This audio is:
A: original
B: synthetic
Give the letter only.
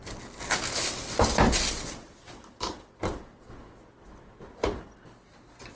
A